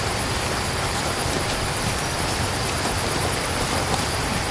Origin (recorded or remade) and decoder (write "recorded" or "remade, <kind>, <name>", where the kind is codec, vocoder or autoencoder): remade, vocoder, BigVGAN v2